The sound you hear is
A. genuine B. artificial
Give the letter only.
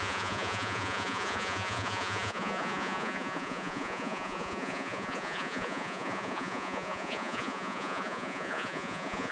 B